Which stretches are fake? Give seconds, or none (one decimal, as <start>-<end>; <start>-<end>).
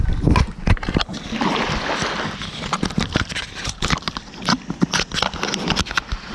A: none